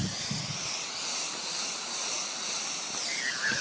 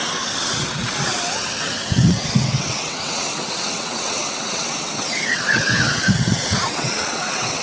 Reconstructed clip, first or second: second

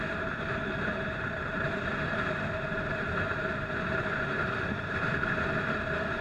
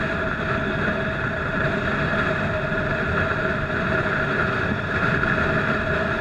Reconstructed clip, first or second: first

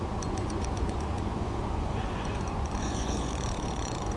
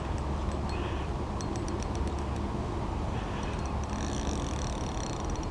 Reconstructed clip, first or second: first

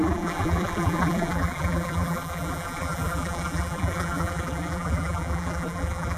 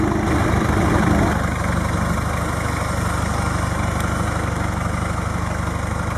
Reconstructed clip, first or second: first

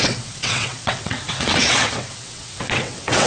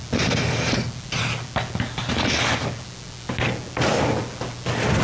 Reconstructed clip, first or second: first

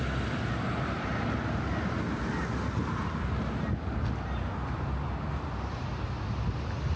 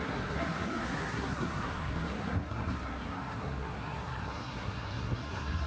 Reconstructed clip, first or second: second